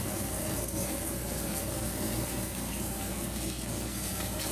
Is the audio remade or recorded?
remade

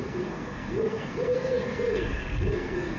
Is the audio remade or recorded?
remade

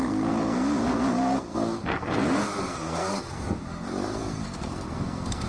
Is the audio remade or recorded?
remade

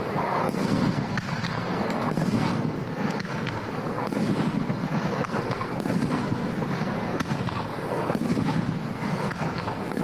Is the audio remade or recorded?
remade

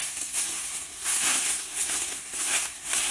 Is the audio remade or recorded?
remade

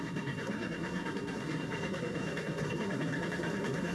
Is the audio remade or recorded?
remade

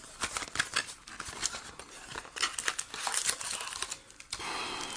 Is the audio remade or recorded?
recorded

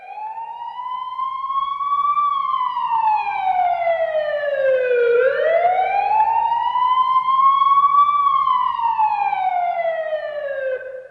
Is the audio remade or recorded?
recorded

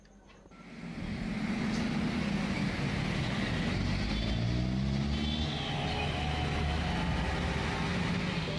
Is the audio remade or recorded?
recorded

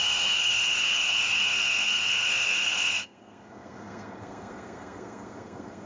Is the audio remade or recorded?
remade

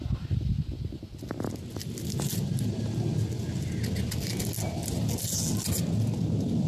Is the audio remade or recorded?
recorded